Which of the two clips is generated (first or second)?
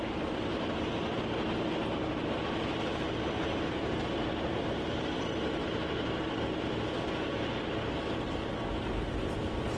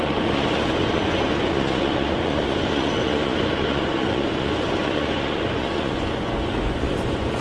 second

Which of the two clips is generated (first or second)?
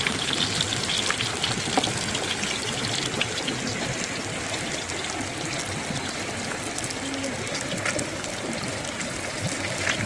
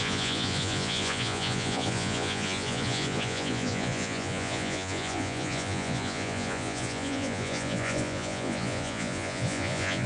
second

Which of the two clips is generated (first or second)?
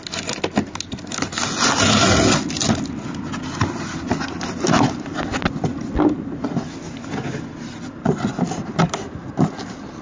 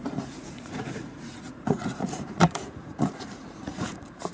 second